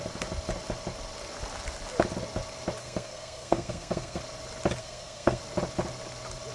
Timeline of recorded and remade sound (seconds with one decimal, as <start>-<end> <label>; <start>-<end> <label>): 0.0-2.8 recorded; 2.8-4.2 remade; 4.2-4.8 recorded; 4.8-5.4 remade; 5.4-6.5 recorded